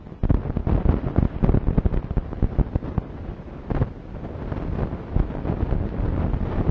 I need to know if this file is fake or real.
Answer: real